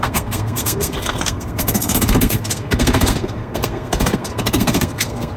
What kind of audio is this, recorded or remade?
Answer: remade